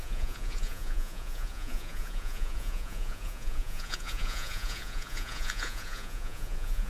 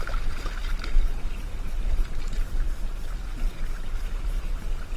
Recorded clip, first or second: second